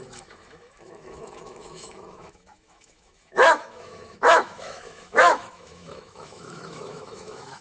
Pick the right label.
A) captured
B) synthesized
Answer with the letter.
B